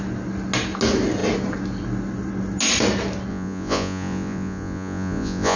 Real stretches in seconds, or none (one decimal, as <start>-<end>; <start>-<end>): 0.0-3.3